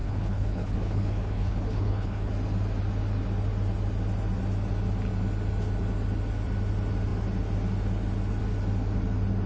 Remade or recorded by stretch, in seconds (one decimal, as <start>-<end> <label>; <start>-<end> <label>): 0.0-2.3 remade; 2.3-9.5 recorded